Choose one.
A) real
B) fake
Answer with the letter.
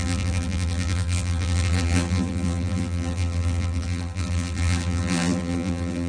B